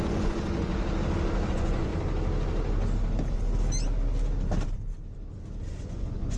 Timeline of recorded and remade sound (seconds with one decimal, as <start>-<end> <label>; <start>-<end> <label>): 0.0-0.7 remade; 0.7-1.5 recorded; 1.5-1.9 remade; 1.9-5.7 recorded; 5.7-6.4 remade